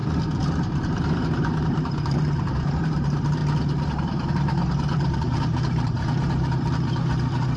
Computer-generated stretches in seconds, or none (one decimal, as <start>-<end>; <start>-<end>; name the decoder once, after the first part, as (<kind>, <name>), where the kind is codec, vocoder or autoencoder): 0.0-3.4 (vocoder, BigVGAN v2); 4.3-7.6